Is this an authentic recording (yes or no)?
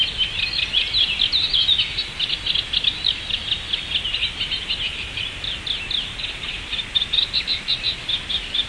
yes